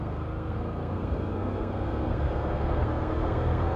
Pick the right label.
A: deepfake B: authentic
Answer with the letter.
A